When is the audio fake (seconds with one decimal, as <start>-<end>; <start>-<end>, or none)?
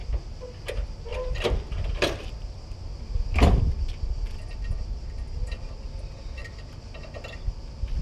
none